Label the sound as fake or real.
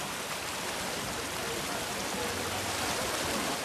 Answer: real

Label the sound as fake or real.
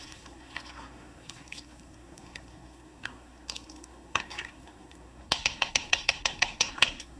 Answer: fake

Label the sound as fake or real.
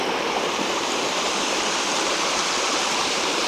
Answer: fake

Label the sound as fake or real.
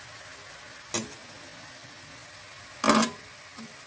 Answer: real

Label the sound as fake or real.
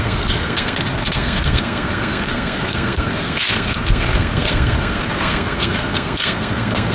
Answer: fake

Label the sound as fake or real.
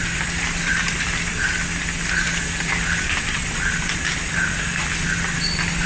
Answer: real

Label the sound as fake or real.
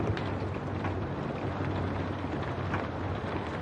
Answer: real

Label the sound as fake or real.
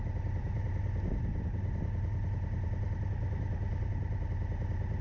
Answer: real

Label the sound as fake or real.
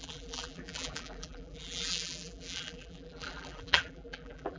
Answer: fake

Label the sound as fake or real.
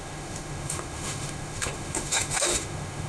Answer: fake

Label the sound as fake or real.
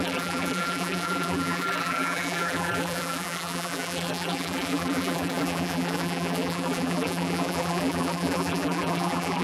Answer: fake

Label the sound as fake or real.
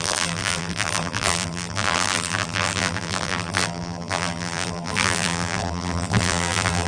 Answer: fake